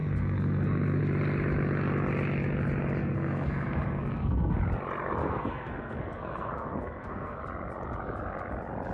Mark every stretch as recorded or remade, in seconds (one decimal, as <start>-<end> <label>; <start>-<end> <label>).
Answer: 0.0-1.0 remade; 1.0-3.0 recorded; 3.0-4.6 remade; 4.6-5.2 recorded; 5.2-7.4 remade; 7.4-8.9 recorded